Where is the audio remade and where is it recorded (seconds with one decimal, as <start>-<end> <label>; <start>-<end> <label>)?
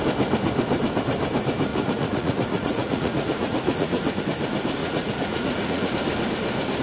0.0-1.7 recorded; 1.7-4.2 remade; 4.2-4.8 recorded; 4.8-5.9 remade; 5.9-6.8 recorded